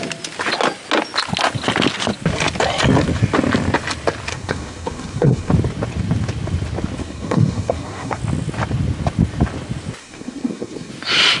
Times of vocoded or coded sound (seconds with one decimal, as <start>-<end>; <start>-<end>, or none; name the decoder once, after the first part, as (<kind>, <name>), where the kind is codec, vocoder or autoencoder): 4.3-5.5 (codec, SNAC); 7.0-8.2; 10.0-10.9